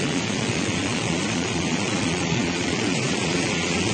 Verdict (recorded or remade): remade